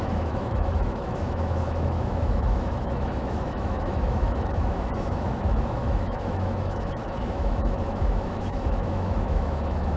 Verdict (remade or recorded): remade